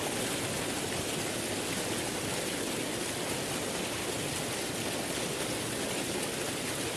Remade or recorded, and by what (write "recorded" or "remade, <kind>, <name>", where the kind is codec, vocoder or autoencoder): recorded